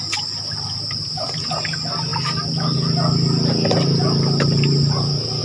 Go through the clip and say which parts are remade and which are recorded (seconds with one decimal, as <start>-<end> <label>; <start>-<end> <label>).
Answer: 0.0-5.4 recorded